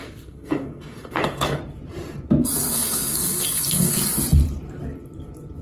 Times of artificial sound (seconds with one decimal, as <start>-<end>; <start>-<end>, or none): 0.0-1.6; 2.7-4.0